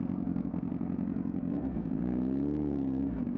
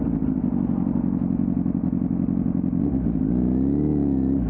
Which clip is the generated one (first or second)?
first